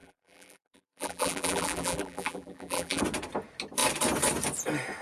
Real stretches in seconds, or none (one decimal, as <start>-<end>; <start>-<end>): 3.0-5.0